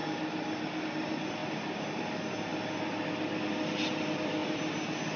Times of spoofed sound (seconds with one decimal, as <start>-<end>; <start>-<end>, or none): none